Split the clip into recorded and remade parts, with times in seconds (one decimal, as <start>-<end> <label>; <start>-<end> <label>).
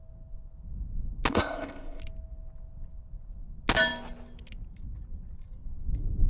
0.0-1.3 recorded; 1.3-2.0 remade; 2.0-6.3 recorded